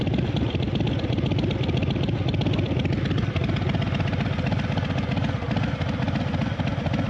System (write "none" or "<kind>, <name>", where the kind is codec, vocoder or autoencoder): none